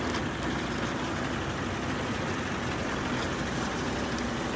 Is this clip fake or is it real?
real